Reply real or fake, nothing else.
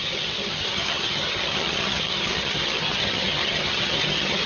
fake